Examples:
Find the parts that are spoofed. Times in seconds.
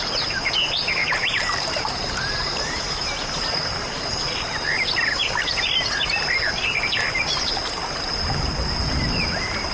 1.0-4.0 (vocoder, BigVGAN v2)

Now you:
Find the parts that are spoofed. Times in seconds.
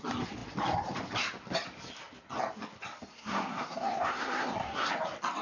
3.1-4.9 (codec, SNAC)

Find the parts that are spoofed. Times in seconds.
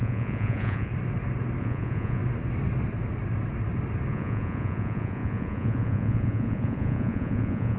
0.0-0.9 (vocoder, Vocos); 1.6-2.2; 4.1-7.8